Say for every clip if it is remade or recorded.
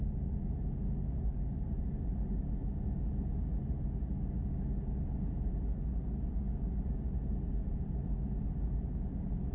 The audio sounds recorded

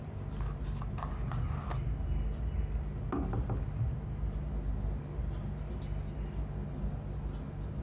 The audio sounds recorded